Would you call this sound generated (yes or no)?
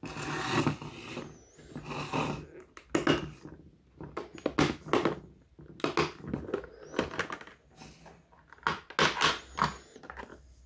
no